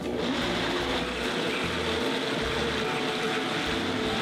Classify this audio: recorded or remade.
recorded